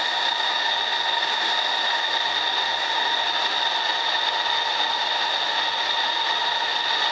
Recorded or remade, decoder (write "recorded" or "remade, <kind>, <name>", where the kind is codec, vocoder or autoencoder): recorded